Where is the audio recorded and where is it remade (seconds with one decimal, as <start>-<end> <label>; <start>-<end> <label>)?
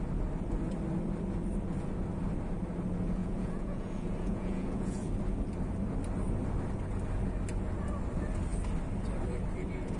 0.0-3.2 recorded; 3.2-5.1 remade; 5.1-10.0 recorded